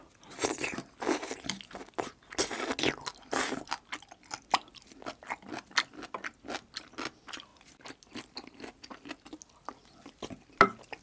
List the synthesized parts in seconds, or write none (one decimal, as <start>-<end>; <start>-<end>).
none

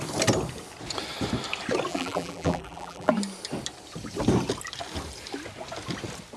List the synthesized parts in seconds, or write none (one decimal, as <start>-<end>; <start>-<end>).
1.9-3.1

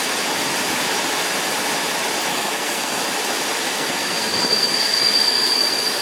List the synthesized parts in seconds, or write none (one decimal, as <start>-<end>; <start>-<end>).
2.3-3.0; 3.7-6.0

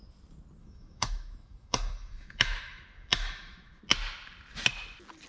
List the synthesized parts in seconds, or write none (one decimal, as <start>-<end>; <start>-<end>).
0.6-3.8

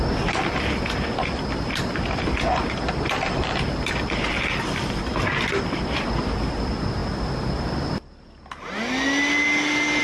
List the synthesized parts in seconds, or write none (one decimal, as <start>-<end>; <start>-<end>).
2.6-5.6

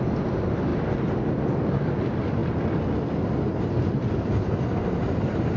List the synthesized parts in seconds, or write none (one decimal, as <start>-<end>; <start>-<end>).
none